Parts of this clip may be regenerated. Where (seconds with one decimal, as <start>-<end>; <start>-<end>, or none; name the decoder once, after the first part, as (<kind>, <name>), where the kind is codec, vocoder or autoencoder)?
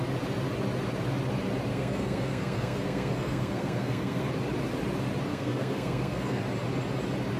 1.7-4.3 (codec, SNAC); 5.3-6.4